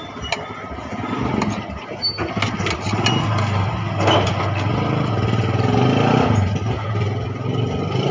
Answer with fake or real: real